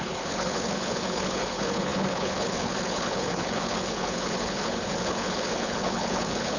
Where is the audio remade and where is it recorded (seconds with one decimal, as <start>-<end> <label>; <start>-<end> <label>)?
0.0-6.6 remade